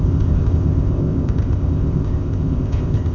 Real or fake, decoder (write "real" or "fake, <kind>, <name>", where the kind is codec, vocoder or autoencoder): fake, codec, ZipCodec